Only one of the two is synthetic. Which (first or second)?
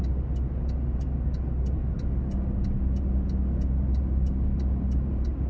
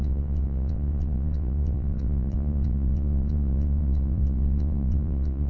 second